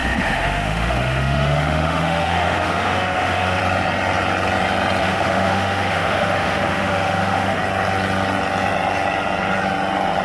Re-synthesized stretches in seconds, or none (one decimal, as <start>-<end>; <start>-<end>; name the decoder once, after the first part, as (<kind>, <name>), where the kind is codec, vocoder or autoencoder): 0.0-3.6 (autoencoder, DAC-VAE); 5.0-7.6